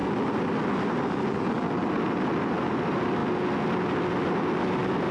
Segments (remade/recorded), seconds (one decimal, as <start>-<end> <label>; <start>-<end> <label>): 0.0-5.1 recorded